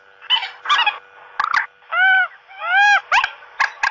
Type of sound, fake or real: real